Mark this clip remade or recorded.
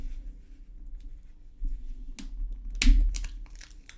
recorded